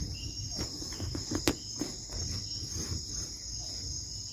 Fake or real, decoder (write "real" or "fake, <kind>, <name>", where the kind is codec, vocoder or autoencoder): real